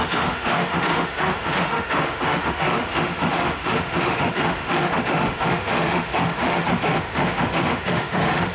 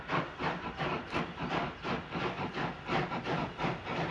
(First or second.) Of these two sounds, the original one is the second